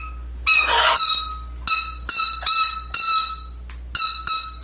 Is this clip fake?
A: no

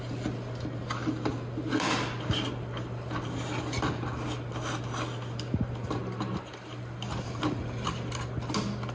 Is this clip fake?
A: no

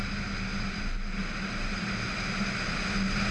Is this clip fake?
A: no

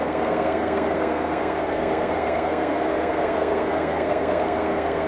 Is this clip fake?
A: yes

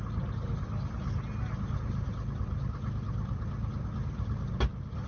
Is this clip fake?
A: no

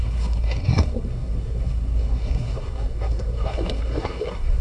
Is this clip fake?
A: yes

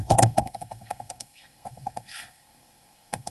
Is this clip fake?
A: yes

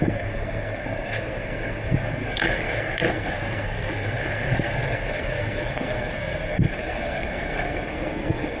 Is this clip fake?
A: yes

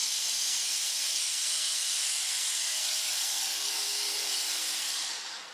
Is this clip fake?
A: yes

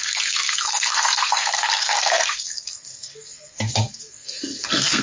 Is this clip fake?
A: yes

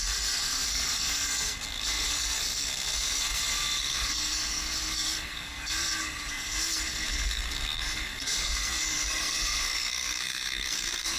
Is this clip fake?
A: yes